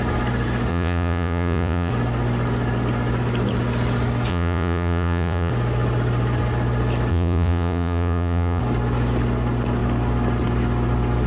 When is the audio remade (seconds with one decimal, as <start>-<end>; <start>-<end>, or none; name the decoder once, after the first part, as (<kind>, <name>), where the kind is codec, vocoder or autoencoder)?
0.7-1.9 (vocoder, Vocos); 4.3-5.5; 7.1-8.6